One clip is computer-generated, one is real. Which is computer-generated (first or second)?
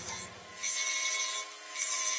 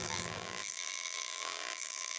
second